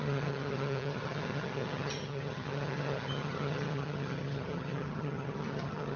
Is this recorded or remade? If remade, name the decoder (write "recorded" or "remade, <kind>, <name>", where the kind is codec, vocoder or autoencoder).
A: remade, vocoder, HiFi-GAN